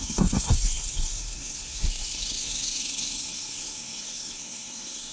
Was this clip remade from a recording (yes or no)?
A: yes